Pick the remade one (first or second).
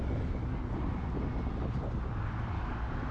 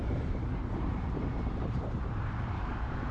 second